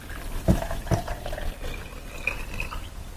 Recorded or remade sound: recorded